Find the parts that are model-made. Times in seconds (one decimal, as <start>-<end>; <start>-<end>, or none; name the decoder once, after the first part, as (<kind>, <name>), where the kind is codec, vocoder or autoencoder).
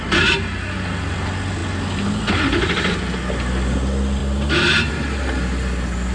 none